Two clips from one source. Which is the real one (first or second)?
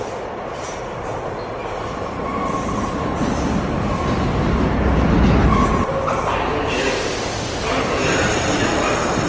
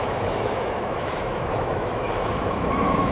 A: first